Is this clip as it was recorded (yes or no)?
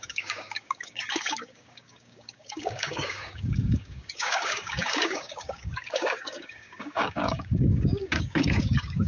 no